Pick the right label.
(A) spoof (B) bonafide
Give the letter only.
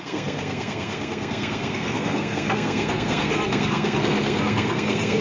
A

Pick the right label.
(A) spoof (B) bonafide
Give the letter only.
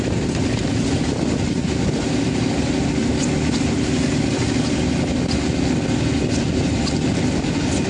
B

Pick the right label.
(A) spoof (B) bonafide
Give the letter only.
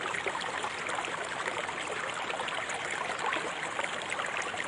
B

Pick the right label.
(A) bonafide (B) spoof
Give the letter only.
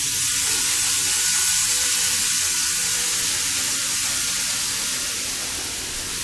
A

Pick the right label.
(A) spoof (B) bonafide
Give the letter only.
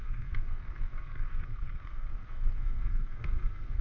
A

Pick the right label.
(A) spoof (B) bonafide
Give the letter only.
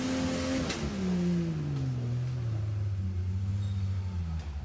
B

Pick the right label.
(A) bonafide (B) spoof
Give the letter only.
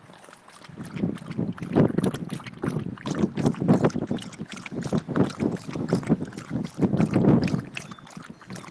A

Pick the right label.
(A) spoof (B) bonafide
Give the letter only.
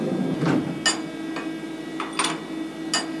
B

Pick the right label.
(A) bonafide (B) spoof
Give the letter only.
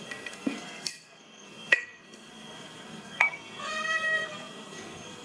B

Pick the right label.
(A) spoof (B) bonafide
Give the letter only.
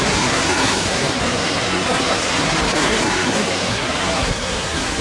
A